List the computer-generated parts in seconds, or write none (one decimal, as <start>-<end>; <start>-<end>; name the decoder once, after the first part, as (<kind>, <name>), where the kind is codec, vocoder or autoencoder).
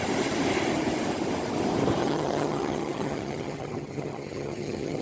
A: 2.0-5.0 (vocoder, HiFi-GAN)